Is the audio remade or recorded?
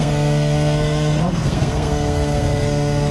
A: remade